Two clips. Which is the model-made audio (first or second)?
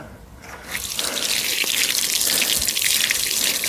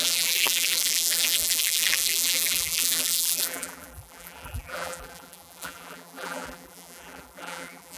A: second